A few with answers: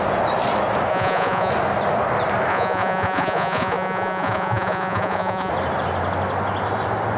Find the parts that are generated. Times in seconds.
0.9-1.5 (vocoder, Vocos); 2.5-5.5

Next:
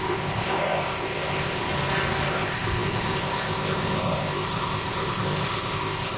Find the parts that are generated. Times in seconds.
0.0-1.7 (codec, ZipCodec); 2.3-6.2